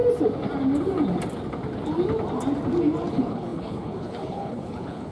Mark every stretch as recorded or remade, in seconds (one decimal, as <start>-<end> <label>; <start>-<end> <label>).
0.0-3.1 recorded; 3.1-5.1 remade